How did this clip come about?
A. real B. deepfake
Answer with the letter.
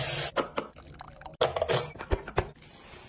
A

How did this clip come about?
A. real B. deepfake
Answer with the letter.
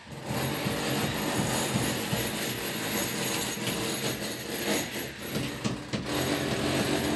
A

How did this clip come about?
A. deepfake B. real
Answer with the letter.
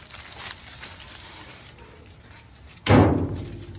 B